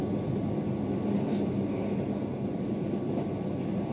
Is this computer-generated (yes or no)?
no